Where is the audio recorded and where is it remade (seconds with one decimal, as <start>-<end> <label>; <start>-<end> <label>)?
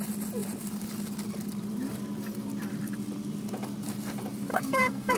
0.0-4.5 recorded; 4.5-5.2 remade